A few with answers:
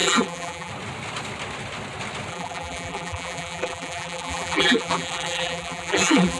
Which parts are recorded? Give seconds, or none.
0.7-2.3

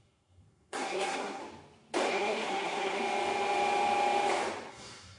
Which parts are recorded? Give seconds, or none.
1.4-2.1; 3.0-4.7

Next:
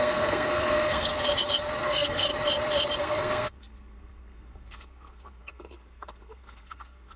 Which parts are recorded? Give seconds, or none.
1.1-1.8; 2.3-3.0

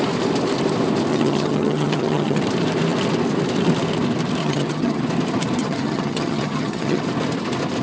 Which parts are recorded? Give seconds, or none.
0.0-1.1; 2.4-4.4; 5.0-5.6; 7.0-7.8